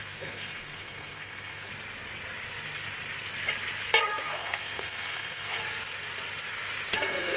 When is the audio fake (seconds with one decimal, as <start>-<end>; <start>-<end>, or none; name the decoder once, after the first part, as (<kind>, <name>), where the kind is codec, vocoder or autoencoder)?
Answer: 0.0-1.7 (codec, SNAC); 4.0-5.6; 6.9-7.4